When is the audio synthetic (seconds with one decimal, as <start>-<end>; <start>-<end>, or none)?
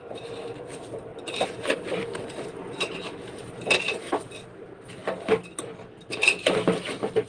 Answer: 1.1-3.8